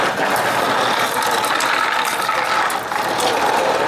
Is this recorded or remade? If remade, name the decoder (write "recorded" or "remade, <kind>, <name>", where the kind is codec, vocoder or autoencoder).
recorded